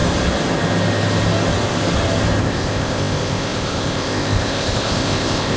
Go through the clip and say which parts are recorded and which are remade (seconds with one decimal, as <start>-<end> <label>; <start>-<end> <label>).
0.0-2.4 recorded; 2.4-5.6 remade